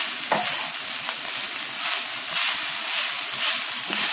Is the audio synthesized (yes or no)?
no